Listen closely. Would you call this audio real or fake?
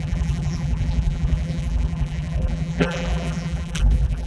fake